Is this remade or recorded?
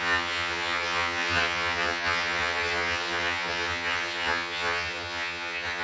remade